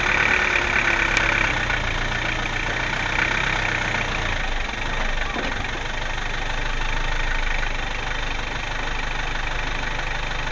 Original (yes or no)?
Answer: yes